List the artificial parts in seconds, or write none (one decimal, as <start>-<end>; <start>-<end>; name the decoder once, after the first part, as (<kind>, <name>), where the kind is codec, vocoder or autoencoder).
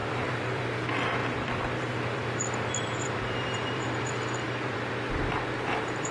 0.0-0.6 (vocoder, BigVGAN v2); 1.2-4.9